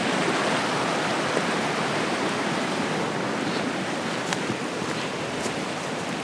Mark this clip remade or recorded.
recorded